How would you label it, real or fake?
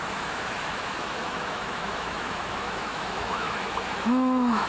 fake